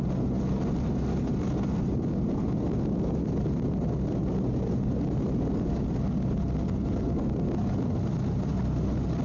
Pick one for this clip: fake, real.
real